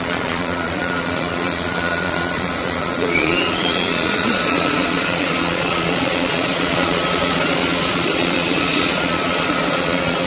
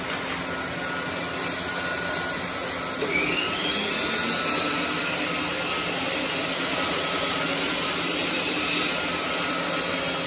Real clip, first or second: second